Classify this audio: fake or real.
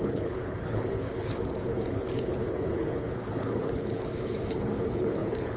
fake